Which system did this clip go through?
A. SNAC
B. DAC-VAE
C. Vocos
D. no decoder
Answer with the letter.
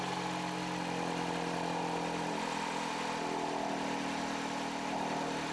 D